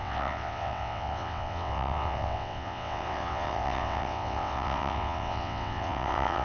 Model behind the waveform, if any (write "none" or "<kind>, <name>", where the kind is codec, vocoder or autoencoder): vocoder, WaveNeXt